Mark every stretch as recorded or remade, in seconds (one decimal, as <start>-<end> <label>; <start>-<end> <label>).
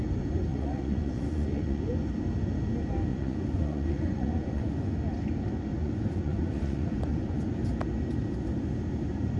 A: 0.0-0.5 recorded; 0.5-1.9 remade; 1.9-3.1 recorded; 3.1-4.9 remade; 4.9-5.8 recorded; 5.8-7.5 remade; 7.5-9.4 recorded